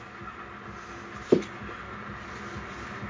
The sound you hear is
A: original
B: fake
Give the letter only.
A